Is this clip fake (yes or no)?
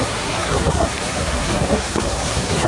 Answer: yes